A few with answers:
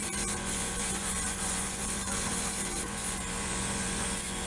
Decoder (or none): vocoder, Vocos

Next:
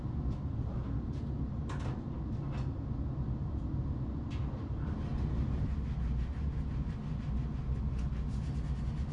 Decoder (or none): none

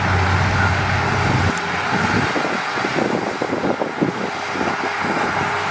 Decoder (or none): none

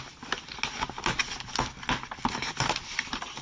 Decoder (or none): none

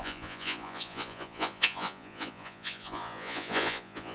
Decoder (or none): vocoder, Vocos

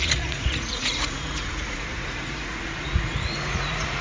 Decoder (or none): vocoder, Vocos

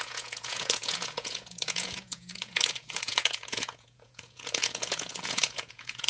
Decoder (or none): vocoder, Vocos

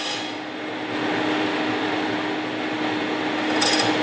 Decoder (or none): none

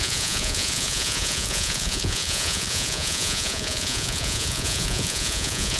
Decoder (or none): vocoder, Vocos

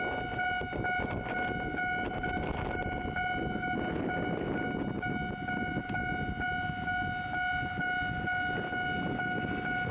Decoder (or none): none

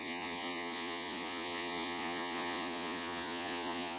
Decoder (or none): vocoder, Vocos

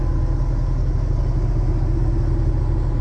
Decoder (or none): none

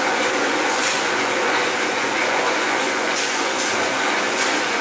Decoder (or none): vocoder, Vocos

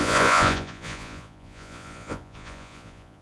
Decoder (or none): vocoder, Vocos